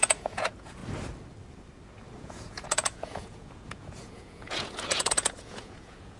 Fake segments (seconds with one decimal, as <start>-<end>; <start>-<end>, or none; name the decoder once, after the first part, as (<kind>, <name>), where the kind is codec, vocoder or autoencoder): 0.0-0.8 (vocoder, Vocos); 2.2-6.2